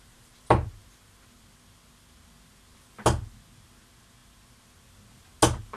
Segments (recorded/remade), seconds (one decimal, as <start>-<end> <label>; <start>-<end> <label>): 0.0-5.8 recorded